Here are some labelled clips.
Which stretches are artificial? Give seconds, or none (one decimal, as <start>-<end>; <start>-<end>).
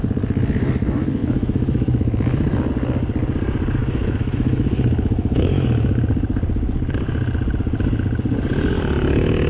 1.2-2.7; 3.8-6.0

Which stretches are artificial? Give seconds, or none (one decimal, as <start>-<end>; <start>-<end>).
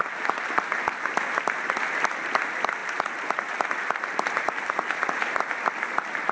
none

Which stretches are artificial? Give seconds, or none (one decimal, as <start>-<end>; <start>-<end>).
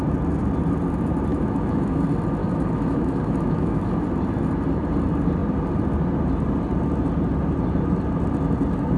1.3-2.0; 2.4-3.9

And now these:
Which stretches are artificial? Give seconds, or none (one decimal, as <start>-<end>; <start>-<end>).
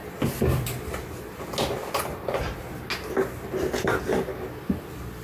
none